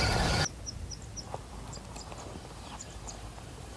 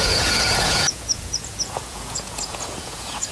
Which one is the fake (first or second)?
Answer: second